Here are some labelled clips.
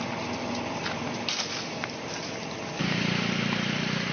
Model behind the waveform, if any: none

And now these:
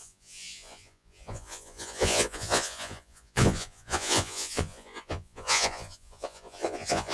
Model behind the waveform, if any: vocoder, Vocos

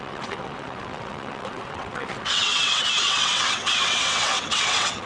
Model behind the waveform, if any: vocoder, WaveNeXt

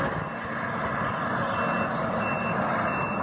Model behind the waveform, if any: none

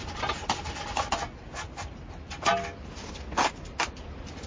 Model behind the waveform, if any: none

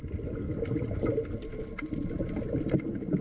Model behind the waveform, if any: none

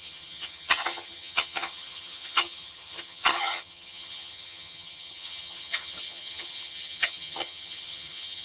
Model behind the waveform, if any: vocoder, HiFi-GAN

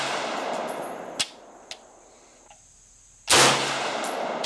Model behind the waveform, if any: none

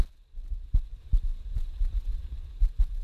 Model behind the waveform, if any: vocoder, BigVGAN v2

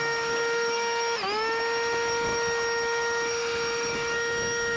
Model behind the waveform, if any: none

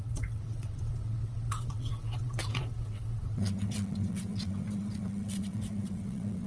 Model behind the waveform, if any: vocoder, WaveNeXt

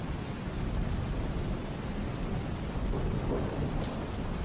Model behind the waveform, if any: none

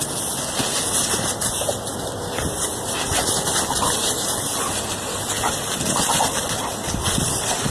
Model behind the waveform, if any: none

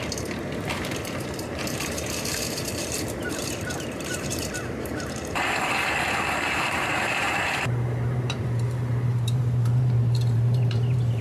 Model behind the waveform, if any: vocoder, BigVGAN v2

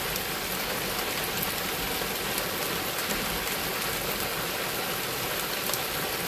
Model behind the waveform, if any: none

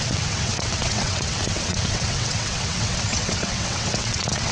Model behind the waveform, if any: vocoder, WaveNeXt